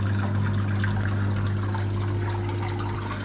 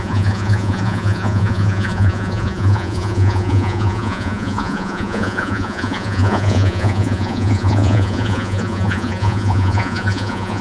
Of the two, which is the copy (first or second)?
second